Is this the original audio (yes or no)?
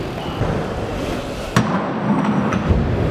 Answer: yes